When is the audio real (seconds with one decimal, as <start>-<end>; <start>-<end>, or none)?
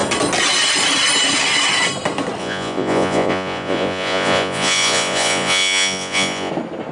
0.0-2.4; 6.5-6.9